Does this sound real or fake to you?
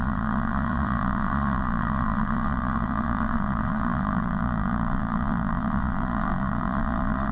fake